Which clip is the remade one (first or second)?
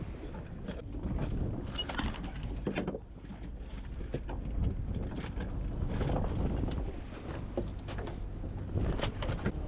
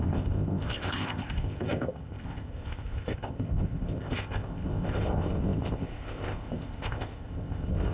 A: second